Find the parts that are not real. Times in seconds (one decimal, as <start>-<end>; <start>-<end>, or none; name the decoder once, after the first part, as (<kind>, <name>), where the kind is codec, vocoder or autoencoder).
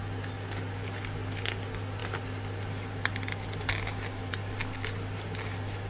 none